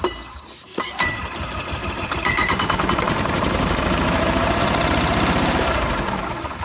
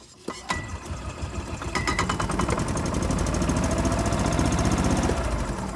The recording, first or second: second